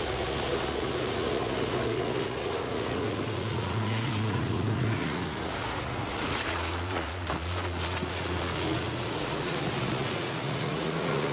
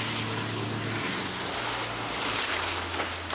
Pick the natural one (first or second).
second